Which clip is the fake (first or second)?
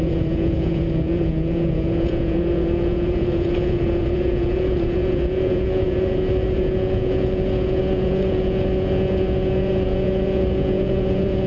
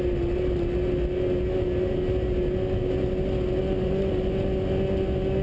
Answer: first